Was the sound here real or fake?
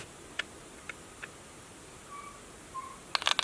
real